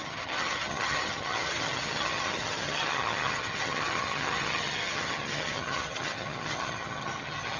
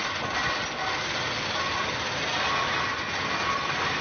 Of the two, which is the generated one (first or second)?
first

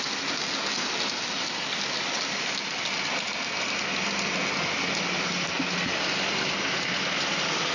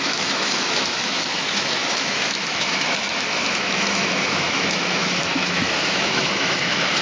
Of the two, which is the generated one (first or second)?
second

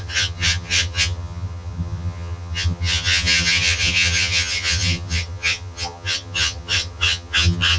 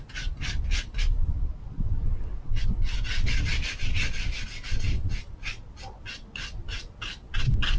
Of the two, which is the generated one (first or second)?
first